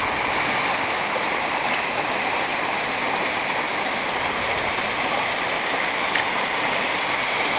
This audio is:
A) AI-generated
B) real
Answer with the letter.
B